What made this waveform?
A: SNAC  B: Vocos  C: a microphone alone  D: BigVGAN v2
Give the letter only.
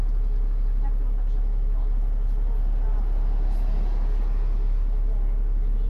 C